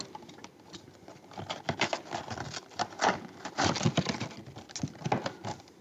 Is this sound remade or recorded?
recorded